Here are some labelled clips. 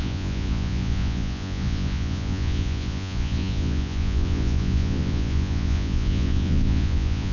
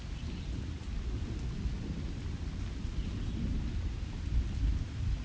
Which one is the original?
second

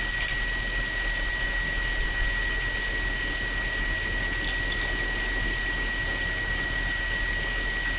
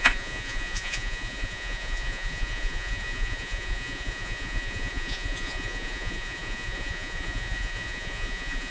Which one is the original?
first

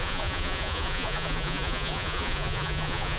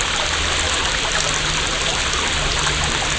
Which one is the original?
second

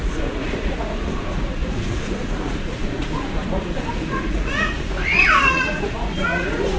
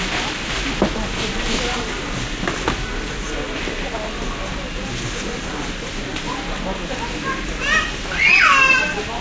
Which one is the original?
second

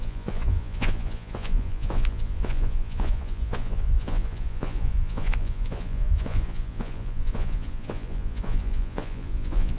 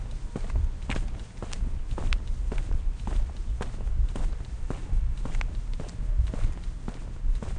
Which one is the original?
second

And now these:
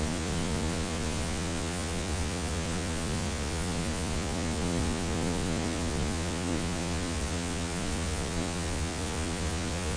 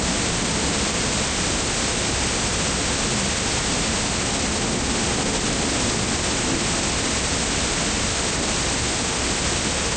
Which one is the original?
second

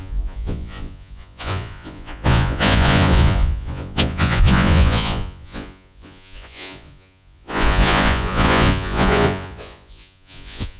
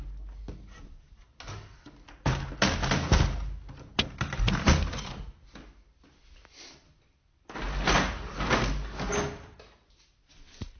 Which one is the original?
second